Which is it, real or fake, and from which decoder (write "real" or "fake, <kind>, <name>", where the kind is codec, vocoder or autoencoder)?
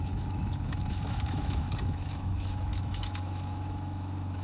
fake, autoencoder, DAC-VAE